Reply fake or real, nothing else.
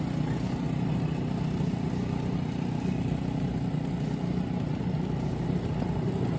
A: real